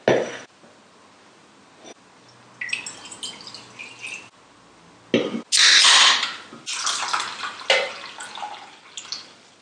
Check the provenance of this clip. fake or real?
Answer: real